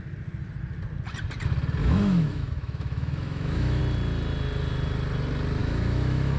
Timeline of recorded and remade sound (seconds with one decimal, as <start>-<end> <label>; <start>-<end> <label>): 0.0-1.8 recorded; 1.8-3.8 remade; 3.8-5.6 recorded; 5.6-6.4 remade